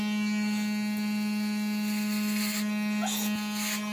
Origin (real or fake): real